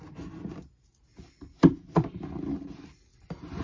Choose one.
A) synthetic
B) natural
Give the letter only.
B